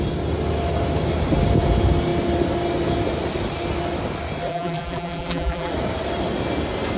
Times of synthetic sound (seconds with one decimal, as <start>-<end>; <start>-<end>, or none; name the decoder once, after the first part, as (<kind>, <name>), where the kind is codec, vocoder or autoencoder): 4.5-5.7 (vocoder, BigVGAN v2)

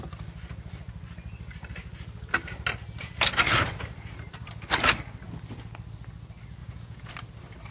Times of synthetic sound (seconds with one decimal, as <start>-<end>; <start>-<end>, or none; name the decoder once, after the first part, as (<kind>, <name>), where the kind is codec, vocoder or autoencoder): 6.6-7.1 (vocoder, Vocos)

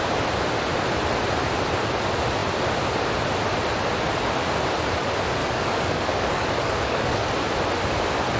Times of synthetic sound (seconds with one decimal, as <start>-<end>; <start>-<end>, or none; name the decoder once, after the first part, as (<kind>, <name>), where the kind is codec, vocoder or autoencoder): 5.4-7.3 (codec, DAC)

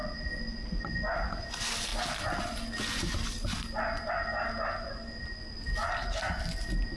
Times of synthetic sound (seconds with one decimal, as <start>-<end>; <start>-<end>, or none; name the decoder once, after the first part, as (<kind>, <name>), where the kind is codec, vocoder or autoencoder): none

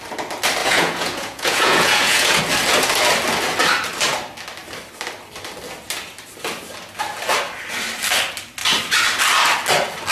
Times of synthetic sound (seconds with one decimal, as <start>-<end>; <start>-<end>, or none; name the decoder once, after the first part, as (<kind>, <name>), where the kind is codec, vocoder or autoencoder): 0.6-2.4 (vocoder, Vocos)